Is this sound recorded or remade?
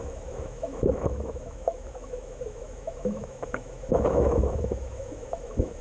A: remade